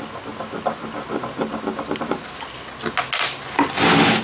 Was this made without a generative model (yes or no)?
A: yes